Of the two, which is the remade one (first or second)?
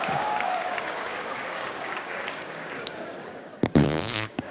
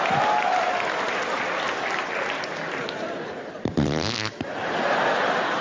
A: first